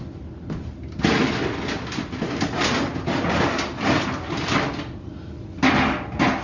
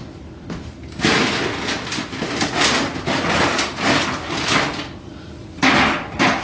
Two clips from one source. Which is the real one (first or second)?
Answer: first